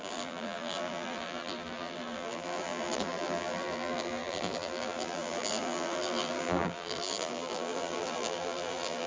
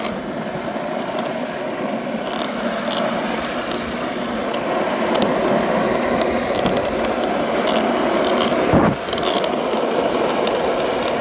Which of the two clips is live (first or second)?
second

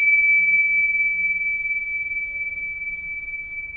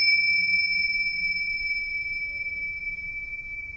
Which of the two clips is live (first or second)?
first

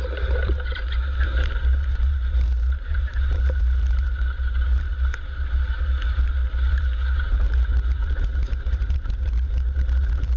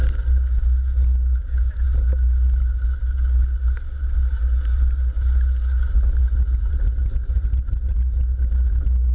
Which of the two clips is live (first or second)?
second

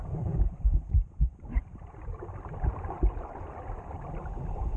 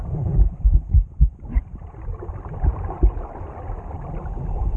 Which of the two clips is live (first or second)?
second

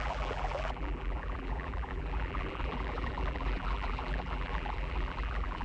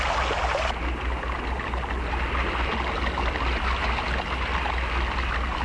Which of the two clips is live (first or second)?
second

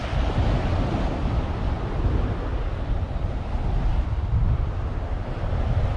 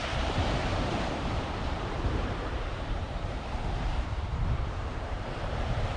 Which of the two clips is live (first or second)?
first